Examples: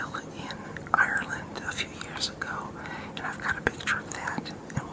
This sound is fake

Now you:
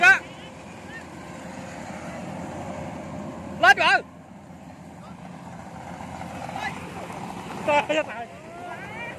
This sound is real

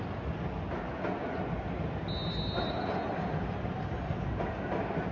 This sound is real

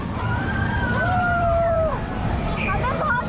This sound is fake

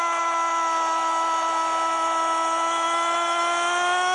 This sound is real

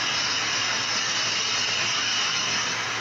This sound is real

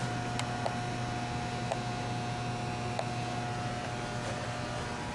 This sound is real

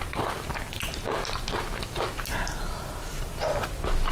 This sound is real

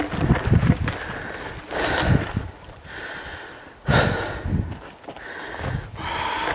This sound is real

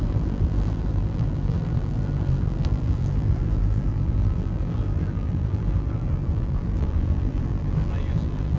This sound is fake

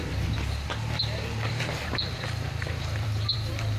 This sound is fake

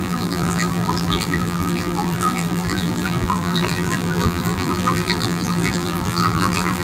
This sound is fake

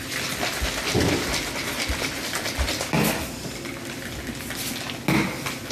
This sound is real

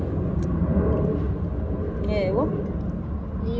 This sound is real